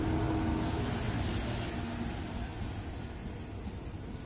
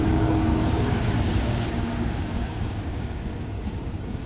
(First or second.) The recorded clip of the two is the first